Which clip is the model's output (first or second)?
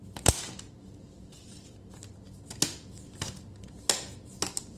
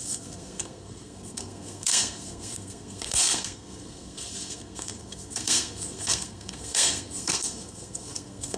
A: second